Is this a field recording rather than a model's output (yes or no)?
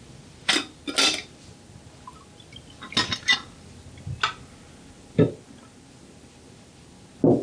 yes